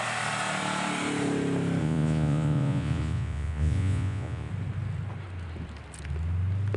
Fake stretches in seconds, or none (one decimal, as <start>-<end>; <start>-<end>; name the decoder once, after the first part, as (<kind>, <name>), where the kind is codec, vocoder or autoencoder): 1.8-4.5 (vocoder, Vocos)